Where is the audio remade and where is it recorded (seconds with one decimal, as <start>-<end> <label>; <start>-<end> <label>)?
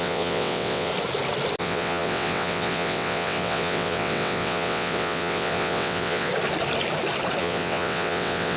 0.0-0.9 remade; 0.9-1.6 recorded; 1.6-6.3 remade; 6.3-7.4 recorded; 7.4-8.6 remade